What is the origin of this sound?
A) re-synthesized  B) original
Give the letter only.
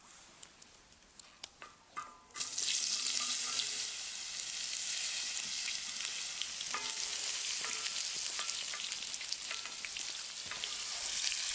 B